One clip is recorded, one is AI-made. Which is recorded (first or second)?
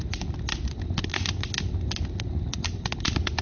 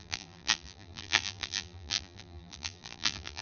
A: first